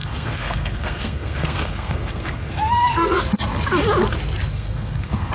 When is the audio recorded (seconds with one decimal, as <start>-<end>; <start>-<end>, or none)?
3.2-4.5